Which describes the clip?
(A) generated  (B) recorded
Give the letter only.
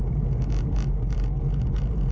B